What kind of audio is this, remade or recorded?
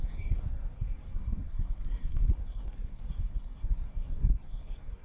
remade